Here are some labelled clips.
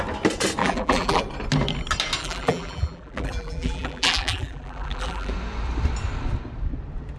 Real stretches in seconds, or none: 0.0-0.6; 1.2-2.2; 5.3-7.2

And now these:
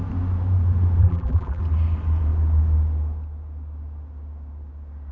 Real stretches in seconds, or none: 0.0-1.0; 1.6-5.1